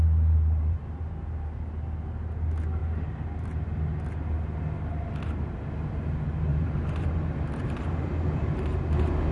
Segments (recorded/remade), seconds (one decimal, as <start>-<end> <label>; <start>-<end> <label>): 0.0-6.5 recorded; 6.5-7.1 remade; 7.1-7.6 recorded; 7.6-8.8 remade; 8.8-9.3 recorded